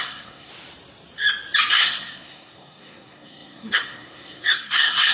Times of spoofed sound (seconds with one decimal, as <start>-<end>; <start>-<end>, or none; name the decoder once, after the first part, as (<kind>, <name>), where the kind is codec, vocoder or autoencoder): 0.0-0.5 (codec, SNAC); 1.7-5.1